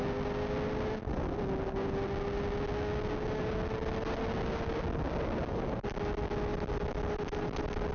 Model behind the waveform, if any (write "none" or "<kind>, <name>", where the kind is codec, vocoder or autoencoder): none